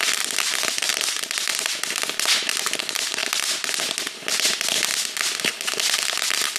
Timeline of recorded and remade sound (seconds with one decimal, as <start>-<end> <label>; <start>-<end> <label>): 0.0-3.2 remade; 3.2-4.0 recorded; 4.0-4.9 remade; 4.9-5.9 recorded; 5.9-6.6 remade